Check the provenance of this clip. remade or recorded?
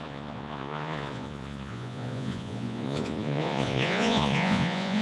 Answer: remade